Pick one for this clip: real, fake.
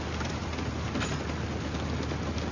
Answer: real